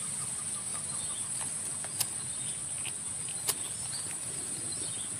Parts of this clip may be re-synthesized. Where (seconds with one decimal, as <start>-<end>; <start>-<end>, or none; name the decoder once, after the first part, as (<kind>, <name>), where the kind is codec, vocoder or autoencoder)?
none